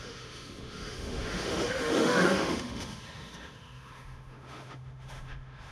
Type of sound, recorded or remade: remade